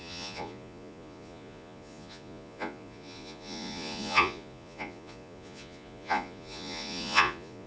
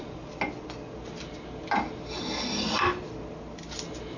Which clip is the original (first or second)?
second